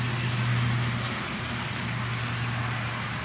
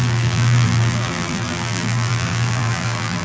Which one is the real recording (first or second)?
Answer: first